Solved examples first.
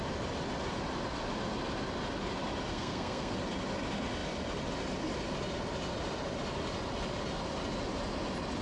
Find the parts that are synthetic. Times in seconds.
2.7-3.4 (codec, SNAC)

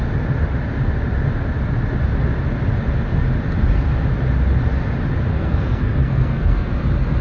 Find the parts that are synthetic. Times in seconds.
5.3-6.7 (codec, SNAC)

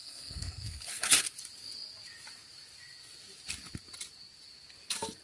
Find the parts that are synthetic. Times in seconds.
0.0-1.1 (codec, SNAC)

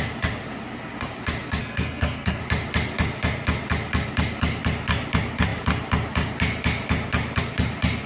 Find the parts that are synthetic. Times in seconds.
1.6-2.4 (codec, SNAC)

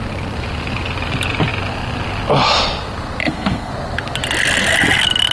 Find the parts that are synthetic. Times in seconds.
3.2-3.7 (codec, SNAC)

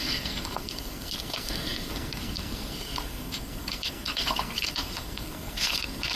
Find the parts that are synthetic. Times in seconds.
0.0-6.2 (codec, SNAC)

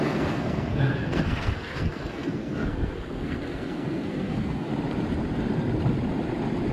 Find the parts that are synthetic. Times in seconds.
0.0-4.7 (codec, SNAC)